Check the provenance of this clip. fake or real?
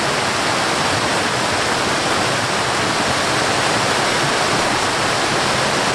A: real